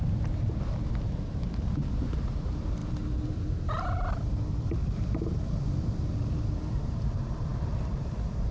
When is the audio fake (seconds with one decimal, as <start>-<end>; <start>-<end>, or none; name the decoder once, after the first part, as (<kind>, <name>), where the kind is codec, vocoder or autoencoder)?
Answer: 0.0-8.5 (vocoder, BigVGAN v2)